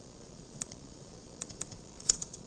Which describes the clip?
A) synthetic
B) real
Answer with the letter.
A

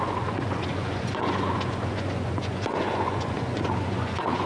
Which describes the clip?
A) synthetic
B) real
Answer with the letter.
A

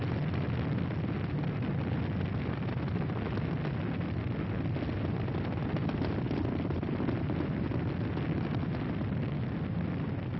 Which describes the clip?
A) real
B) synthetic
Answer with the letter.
A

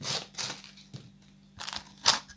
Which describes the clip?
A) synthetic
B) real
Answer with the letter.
B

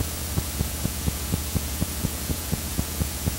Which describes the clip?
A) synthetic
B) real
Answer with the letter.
A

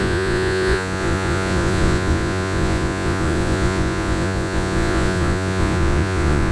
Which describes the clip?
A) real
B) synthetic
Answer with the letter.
B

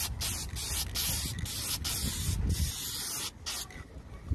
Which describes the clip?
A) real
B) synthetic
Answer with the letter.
A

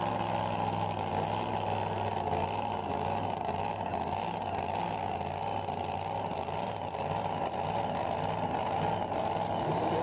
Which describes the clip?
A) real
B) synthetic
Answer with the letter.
A